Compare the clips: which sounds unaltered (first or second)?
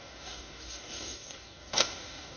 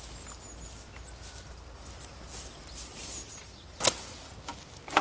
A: second